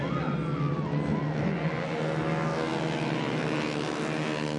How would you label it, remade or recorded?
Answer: recorded